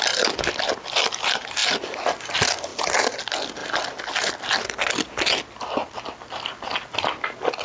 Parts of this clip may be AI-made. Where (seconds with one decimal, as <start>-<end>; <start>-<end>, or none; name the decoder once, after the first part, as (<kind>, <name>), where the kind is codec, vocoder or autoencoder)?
none